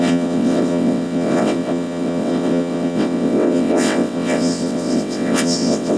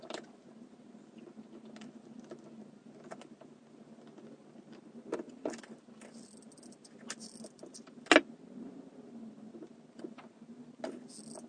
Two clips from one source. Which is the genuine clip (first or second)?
second